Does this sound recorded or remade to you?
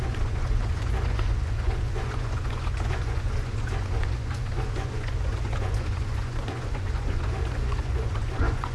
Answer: remade